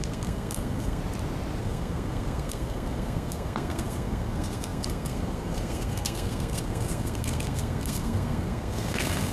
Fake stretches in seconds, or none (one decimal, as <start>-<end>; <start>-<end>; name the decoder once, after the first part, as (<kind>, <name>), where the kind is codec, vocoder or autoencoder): 0.0-1.0 (codec, SNAC); 1.6-9.3